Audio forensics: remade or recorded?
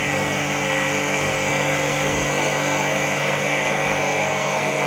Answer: remade